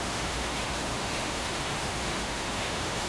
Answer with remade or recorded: remade